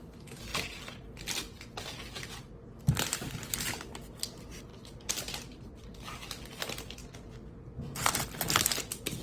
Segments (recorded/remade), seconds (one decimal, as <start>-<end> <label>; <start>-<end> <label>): 0.0-9.2 recorded